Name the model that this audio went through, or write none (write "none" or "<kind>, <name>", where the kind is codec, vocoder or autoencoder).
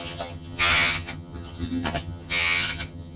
vocoder, HiFi-GAN